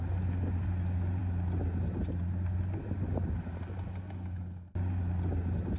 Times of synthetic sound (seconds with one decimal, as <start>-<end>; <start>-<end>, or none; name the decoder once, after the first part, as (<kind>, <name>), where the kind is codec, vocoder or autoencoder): none